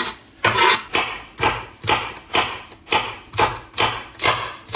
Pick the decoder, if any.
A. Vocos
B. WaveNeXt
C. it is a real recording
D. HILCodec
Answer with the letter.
C